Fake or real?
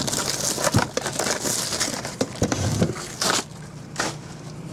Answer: real